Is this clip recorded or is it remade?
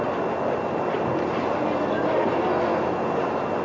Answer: recorded